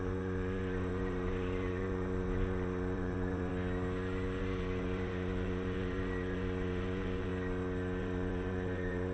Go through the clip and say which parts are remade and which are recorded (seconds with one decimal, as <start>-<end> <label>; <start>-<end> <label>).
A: 0.0-3.5 remade; 3.5-4.4 recorded; 4.4-7.3 remade; 7.3-8.0 recorded; 8.0-9.1 remade

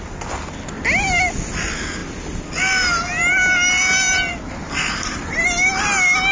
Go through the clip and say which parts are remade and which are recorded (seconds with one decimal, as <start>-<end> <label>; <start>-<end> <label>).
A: 0.0-6.3 recorded

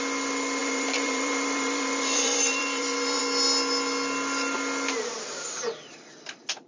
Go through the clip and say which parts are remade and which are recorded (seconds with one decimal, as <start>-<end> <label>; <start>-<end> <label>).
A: 0.0-0.6 recorded; 0.6-3.2 remade; 3.2-6.7 recorded